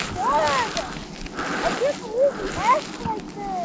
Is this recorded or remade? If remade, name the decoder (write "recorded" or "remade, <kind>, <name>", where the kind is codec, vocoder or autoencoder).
recorded